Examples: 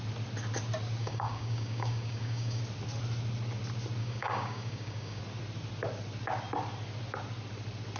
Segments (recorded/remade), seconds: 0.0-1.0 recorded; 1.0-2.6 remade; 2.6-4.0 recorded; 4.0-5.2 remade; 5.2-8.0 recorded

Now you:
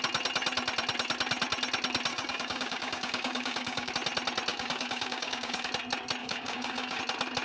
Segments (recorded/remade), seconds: 0.0-2.1 recorded; 2.1-3.9 remade; 3.9-4.5 recorded; 4.5-5.7 remade; 5.7-6.2 recorded; 6.2-7.0 remade; 7.0-7.4 recorded